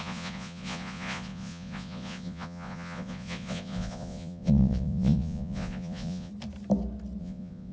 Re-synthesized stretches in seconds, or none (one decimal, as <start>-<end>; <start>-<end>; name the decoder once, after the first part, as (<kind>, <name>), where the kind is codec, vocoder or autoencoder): 0.0-6.3 (vocoder, Vocos); 7.2-7.7

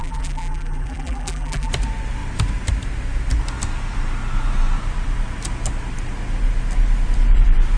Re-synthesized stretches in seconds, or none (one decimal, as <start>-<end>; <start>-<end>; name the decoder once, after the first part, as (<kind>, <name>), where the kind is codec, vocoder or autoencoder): 0.0-1.7 (vocoder, BigVGAN v2)

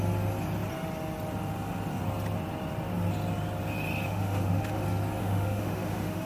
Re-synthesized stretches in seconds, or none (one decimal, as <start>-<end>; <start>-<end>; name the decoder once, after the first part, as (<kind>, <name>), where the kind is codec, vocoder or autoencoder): 4.1-4.8 (autoencoder, DAC-VAE); 5.2-6.3

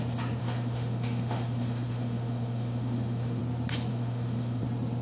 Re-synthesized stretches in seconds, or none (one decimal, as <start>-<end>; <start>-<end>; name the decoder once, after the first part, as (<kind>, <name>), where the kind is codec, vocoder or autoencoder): 0.4-3.4 (autoencoder, DAC-VAE); 3.9-4.6

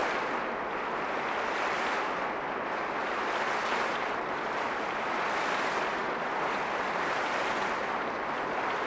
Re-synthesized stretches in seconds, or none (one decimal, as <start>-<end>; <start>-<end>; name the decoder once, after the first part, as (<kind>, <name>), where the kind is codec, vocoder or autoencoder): none

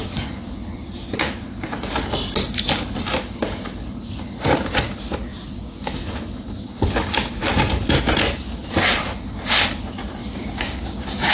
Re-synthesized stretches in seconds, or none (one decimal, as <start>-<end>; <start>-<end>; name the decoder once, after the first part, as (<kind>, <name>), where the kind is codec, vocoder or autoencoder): 5.3-5.9 (codec, DAC); 10.2-11.3

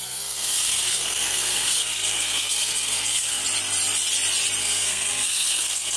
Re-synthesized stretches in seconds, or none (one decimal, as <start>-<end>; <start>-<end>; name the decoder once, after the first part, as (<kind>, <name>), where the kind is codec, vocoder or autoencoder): 0.0-3.4 (codec, SNAC); 4.6-6.0